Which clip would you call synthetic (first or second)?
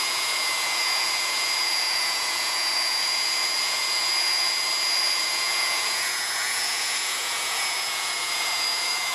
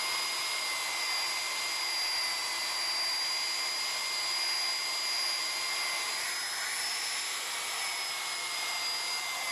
first